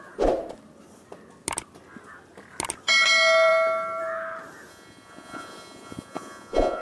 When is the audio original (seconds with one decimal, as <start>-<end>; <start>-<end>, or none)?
0.0-4.7